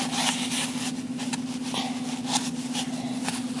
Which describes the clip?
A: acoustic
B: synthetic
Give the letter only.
A